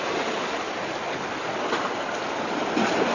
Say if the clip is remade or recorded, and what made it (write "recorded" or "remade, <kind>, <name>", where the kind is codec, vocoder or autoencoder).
recorded